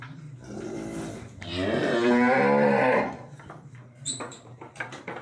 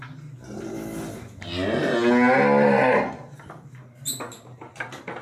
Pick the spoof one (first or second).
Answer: first